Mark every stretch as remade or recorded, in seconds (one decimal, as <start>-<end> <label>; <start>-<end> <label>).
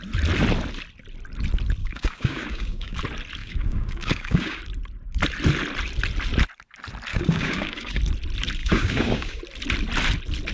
0.0-1.8 recorded; 1.8-3.0 remade; 3.0-3.4 recorded; 3.4-4.6 remade; 4.6-7.1 recorded; 7.1-8.0 remade; 8.0-8.6 recorded; 8.6-9.4 remade; 9.4-10.5 recorded